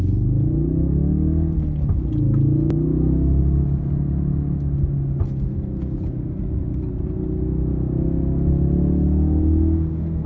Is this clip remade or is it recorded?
recorded